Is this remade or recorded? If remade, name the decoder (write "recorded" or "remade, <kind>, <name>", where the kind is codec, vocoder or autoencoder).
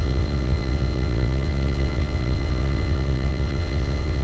remade, vocoder, WaveNeXt